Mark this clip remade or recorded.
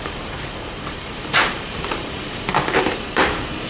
remade